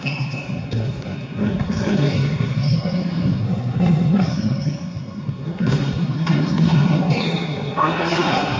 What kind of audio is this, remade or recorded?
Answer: remade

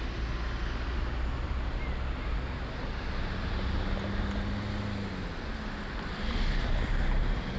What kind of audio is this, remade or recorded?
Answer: recorded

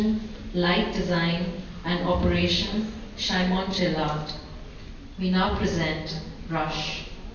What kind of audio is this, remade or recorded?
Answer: recorded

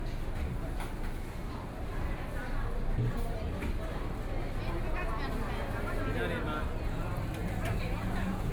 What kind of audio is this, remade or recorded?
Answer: recorded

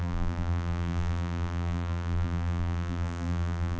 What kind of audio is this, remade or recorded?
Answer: remade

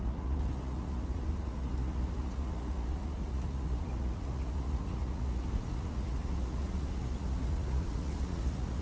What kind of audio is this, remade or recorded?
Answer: remade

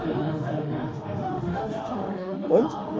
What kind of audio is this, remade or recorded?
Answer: remade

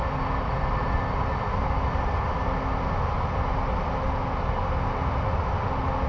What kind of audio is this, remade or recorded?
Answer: recorded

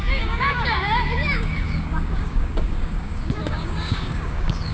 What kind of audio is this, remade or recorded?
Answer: remade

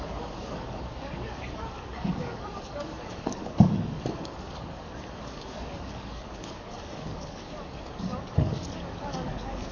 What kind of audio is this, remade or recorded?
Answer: remade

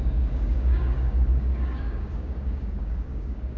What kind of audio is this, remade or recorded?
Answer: remade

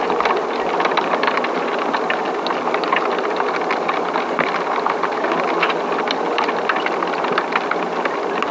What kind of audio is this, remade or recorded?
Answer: recorded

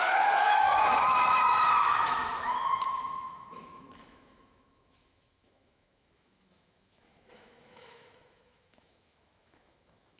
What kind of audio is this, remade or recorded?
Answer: remade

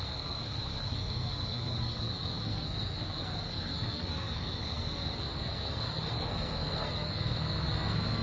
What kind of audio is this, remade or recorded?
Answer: remade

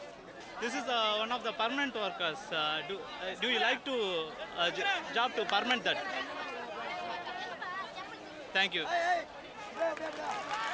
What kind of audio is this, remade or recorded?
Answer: recorded